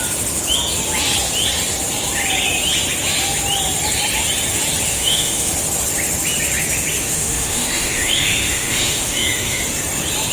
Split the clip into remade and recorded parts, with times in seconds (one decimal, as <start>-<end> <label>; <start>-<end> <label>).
0.0-4.9 recorded; 4.9-5.5 remade; 5.5-7.0 recorded; 7.0-9.6 remade; 9.6-10.3 recorded